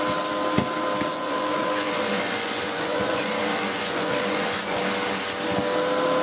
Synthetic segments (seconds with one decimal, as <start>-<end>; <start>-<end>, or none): 1.1-4.8